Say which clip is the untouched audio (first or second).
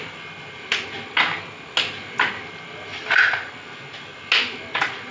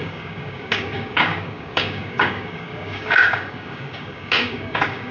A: first